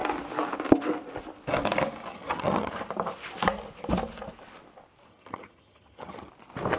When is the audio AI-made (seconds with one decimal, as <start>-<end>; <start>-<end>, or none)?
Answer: 2.1-2.7; 5.1-6.3